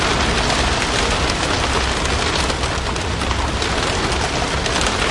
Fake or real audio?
real